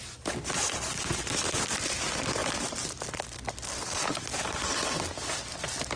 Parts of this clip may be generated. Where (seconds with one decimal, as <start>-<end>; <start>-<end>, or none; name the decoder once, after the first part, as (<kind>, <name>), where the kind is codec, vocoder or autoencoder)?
none